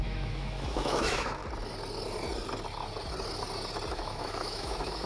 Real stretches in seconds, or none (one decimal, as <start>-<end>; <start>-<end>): 1.4-3.9